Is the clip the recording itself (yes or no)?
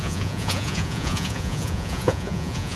no